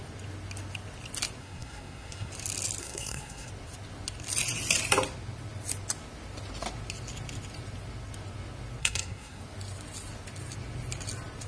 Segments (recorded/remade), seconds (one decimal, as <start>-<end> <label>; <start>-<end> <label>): 0.0-1.4 recorded; 1.4-2.3 remade; 2.3-2.8 recorded; 2.8-3.5 remade; 3.5-8.8 recorded; 8.8-9.4 remade; 9.4-11.5 recorded